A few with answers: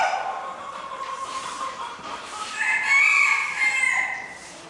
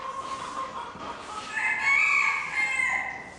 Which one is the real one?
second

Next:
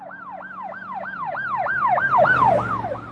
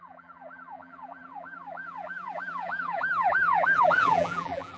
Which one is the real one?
first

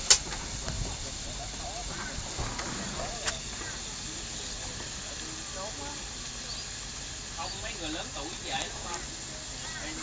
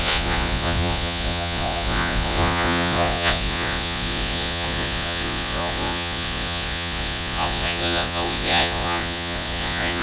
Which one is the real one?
first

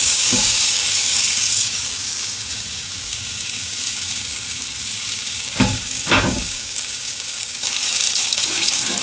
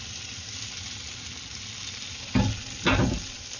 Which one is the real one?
second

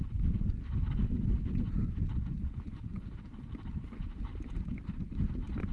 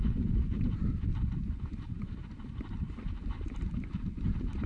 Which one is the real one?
first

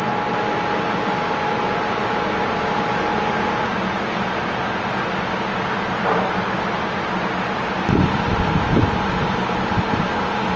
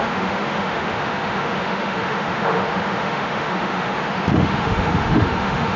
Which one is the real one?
first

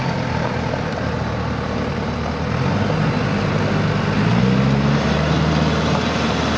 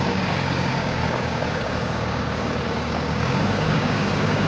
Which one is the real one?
first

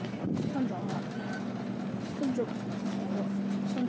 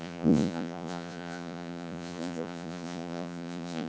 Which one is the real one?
first